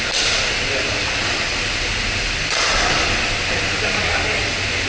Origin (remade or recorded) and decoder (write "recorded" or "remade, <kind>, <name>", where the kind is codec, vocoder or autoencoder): recorded